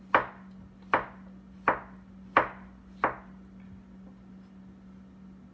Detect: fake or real real